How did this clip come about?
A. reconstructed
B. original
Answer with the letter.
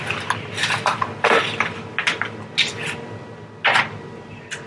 B